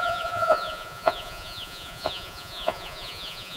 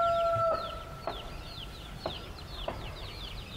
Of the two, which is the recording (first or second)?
second